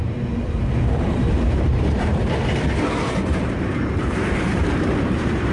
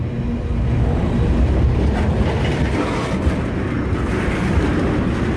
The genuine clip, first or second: second